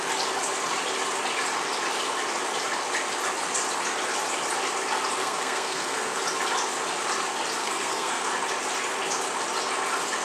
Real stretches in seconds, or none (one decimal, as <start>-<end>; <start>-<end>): 0.0-5.2; 6.2-7.6; 8.3-10.2